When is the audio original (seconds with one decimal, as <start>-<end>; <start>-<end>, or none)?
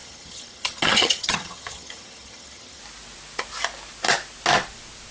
2.8-5.1